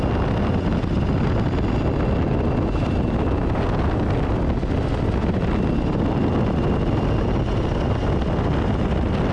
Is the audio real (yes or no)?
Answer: yes